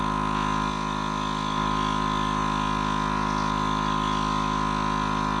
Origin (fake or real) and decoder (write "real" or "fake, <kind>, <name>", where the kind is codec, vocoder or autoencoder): real